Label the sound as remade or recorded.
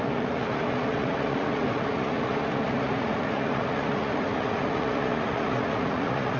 remade